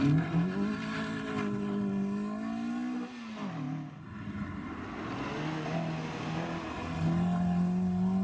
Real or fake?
real